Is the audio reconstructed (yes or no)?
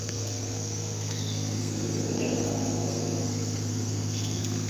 yes